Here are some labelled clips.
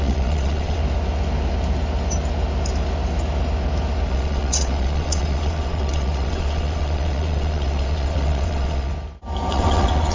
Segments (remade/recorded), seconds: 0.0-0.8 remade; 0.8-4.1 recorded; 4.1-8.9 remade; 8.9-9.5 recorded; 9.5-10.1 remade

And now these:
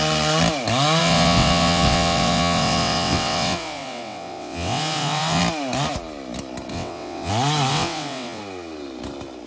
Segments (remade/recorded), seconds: 0.0-1.0 recorded; 1.0-5.4 remade; 5.4-6.7 recorded; 6.7-7.3 remade; 7.3-7.7 recorded; 7.7-8.4 remade; 8.4-9.5 recorded

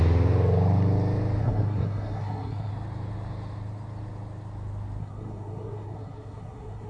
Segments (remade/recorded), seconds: 0.0-1.4 recorded; 1.4-2.7 remade; 2.7-5.0 recorded; 5.0-6.9 remade

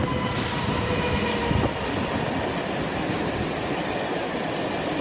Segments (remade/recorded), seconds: 0.0-5.0 recorded